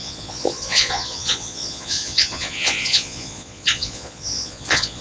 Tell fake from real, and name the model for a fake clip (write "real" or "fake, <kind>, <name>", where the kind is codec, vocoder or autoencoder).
fake, vocoder, Vocos